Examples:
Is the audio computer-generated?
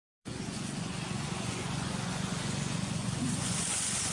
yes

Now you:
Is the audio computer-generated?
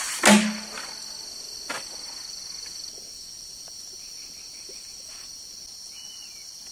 no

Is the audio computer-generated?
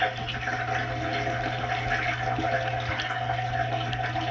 no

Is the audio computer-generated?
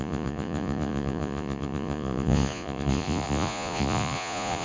yes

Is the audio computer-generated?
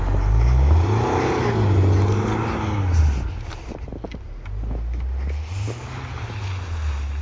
no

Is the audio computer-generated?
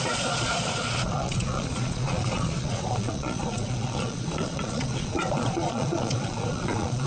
yes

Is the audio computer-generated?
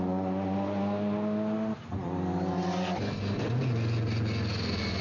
no